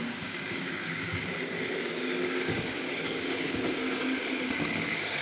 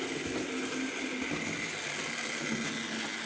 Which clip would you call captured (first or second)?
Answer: second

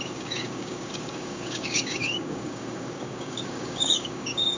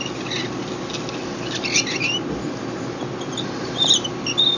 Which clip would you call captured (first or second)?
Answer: second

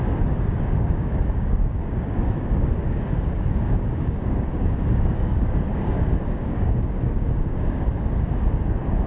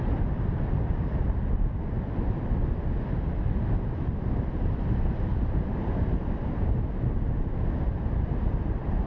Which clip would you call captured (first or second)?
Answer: second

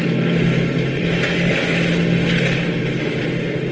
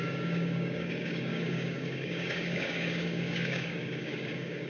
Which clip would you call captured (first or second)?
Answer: first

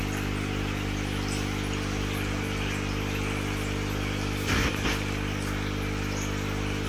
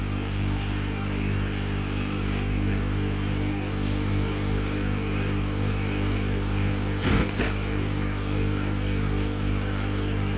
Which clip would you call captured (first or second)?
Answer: first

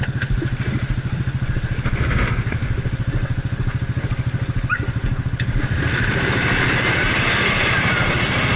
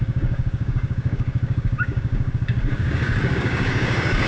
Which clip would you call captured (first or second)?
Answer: first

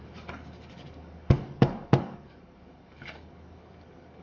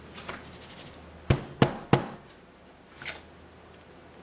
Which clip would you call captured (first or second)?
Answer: second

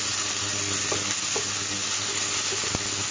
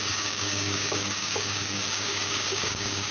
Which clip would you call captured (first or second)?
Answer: first